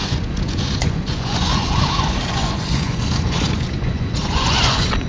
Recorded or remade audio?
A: remade